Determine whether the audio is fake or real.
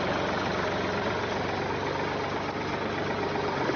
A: real